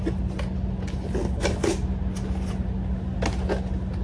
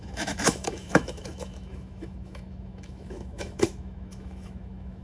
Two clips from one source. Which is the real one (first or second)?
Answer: first